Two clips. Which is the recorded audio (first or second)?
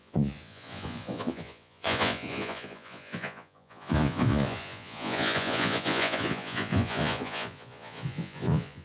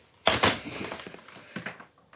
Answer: second